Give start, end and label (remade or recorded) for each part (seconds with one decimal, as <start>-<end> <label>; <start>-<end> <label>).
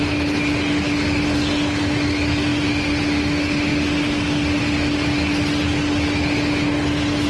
0.0-7.3 recorded